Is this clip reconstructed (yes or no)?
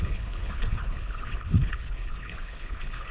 yes